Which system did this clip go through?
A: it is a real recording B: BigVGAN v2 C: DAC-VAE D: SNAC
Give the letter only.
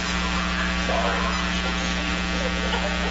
A